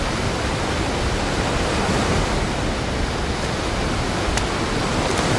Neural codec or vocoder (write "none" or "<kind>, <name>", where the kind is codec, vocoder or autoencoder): none